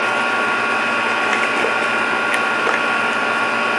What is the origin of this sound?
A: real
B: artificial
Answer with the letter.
A